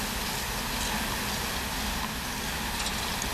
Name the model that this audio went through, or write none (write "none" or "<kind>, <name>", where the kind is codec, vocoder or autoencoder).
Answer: none